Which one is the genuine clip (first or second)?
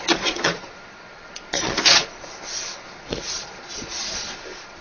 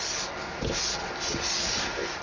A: second